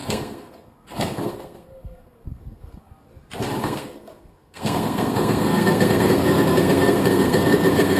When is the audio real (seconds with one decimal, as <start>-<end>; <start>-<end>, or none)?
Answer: 2.9-3.6